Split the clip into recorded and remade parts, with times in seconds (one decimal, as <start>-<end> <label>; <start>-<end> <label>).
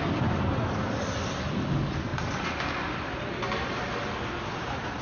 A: 0.0-5.0 recorded